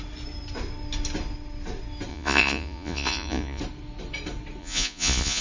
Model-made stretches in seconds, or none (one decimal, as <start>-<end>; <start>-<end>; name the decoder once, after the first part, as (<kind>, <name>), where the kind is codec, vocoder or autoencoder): 2.1-3.6 (vocoder, Vocos); 4.6-5.4